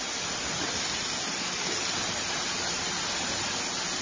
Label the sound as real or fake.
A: real